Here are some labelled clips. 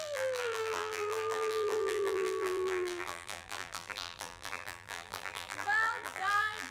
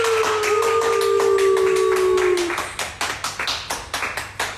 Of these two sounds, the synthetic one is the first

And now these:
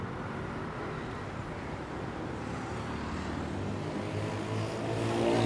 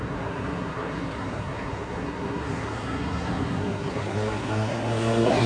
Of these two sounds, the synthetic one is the second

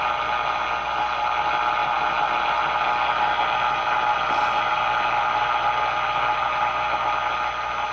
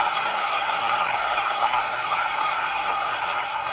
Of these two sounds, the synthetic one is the second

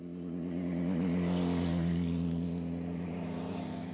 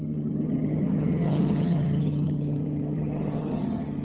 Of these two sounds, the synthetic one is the second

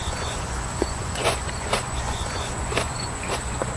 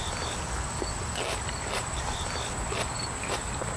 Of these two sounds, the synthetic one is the first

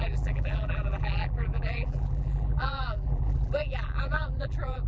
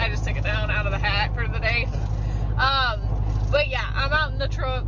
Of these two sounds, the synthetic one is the first